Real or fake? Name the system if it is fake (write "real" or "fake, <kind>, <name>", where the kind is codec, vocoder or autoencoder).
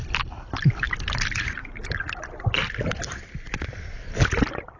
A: real